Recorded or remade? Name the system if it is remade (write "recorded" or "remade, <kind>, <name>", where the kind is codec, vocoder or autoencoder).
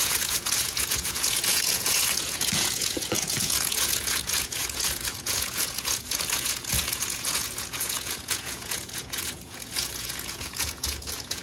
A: remade, vocoder, Vocos